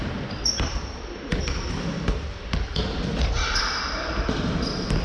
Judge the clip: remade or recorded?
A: remade